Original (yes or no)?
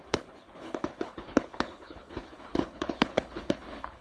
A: no